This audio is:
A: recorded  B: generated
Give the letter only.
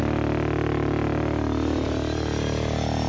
A